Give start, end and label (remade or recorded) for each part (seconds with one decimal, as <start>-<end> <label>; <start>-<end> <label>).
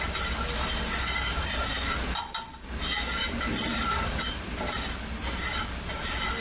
0.0-6.4 recorded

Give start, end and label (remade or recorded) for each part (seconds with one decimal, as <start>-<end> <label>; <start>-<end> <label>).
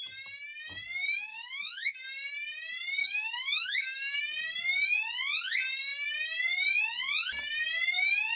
0.0-1.3 recorded; 1.3-1.9 remade; 1.9-3.0 recorded; 3.0-4.2 remade; 4.2-8.4 recorded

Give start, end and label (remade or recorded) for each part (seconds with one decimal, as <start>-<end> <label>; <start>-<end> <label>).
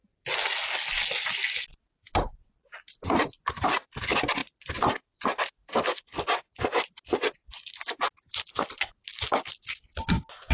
0.0-10.5 recorded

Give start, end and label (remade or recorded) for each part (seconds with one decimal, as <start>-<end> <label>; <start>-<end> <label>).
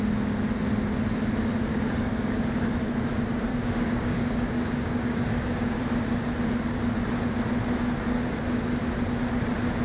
0.0-1.7 recorded; 1.7-2.4 remade; 2.4-3.5 recorded; 3.5-5.8 remade; 5.8-9.8 recorded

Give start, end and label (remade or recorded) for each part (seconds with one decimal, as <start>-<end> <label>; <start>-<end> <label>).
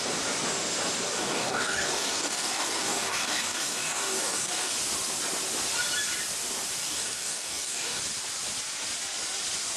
0.0-1.1 recorded; 1.1-4.7 remade; 4.7-6.8 recorded; 6.8-8.0 remade; 8.0-9.8 recorded